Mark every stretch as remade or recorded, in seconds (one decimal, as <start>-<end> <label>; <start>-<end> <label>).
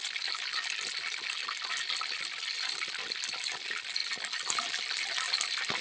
0.0-5.8 recorded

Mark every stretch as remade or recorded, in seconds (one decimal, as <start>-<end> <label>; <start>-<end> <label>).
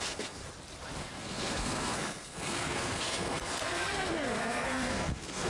0.0-0.4 remade; 0.4-1.0 recorded; 1.0-5.5 remade